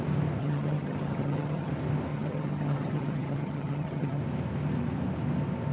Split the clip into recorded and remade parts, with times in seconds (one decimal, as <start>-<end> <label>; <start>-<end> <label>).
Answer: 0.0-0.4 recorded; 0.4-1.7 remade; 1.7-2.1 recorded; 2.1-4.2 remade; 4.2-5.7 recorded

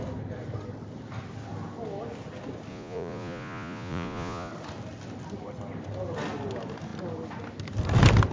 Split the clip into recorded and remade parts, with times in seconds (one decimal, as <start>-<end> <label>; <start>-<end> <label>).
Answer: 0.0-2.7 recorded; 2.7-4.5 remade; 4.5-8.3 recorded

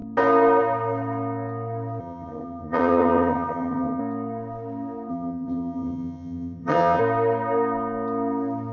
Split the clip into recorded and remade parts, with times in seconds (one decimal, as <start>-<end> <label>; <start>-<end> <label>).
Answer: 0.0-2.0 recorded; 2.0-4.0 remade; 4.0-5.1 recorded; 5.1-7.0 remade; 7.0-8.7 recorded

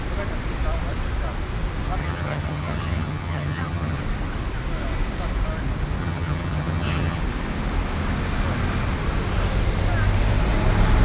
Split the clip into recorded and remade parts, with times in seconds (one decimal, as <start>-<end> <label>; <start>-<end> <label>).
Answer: 0.0-2.0 recorded; 2.0-4.0 remade; 4.0-6.0 recorded; 6.0-7.2 remade; 7.2-11.0 recorded

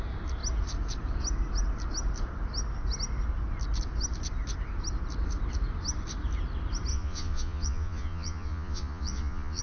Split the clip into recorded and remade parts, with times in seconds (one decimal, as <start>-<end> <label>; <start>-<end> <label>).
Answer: 0.0-6.9 recorded; 6.9-9.6 remade